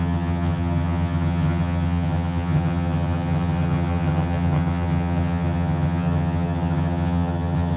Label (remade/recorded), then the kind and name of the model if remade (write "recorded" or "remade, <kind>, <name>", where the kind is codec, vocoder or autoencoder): remade, vocoder, HiFi-GAN